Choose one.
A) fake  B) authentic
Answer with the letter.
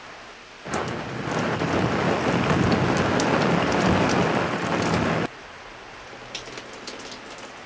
B